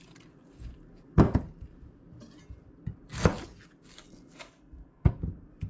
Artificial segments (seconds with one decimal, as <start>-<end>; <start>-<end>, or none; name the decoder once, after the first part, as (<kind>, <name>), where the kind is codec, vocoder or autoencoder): 4.4-5.2 (codec, SNAC)